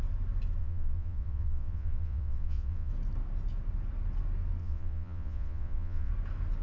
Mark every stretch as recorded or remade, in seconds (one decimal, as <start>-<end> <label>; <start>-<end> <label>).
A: 0.0-0.6 recorded; 0.6-2.9 remade; 2.9-4.6 recorded; 4.6-6.1 remade; 6.1-6.6 recorded